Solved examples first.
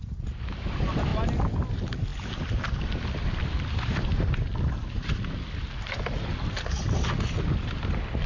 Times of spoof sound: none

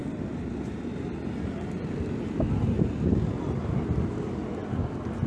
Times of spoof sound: 0.0-0.7 (vocoder, BigVGAN v2)

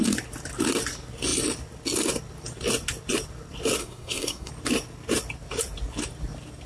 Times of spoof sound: 3.8-4.5 (codec, SNAC)

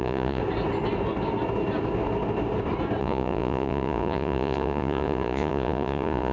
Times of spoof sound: 0.0-0.4 (vocoder, Vocos); 3.0-6.3

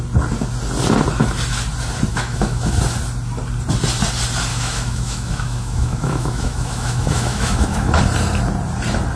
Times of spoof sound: 2.1-2.8 (autoencoder, DAC-VAE); 4.5-8.0

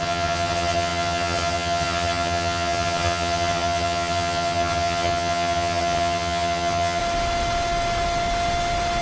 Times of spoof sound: 0.0-7.0 (vocoder, HiFi-GAN)

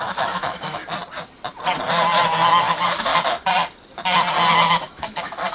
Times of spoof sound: 0.0-0.8 (autoencoder, DAC-VAE); 2.5-3.1; 4.5-5.5